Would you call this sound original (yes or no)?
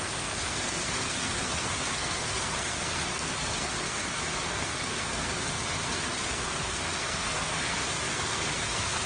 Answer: no